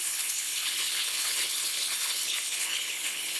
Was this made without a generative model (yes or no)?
no